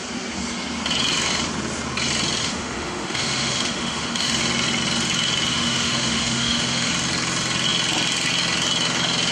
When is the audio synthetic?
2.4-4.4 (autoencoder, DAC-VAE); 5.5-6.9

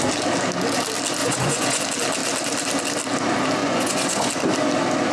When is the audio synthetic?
1.2-1.8 (vocoder, Vocos); 3.6-4.3